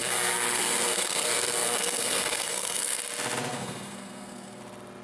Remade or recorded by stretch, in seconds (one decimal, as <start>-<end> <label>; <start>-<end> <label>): 0.0-3.0 remade; 3.0-3.5 recorded; 3.5-4.6 remade; 4.6-5.0 recorded